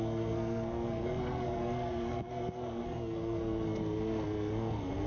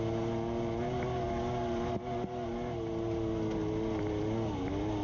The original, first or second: second